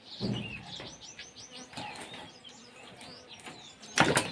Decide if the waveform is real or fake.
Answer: real